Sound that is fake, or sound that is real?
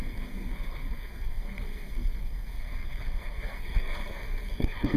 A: fake